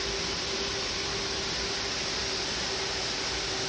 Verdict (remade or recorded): recorded